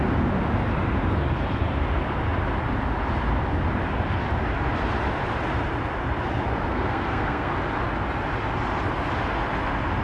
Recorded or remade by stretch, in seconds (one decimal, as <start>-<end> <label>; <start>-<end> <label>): 0.0-6.7 recorded; 6.7-7.5 remade; 7.5-10.0 recorded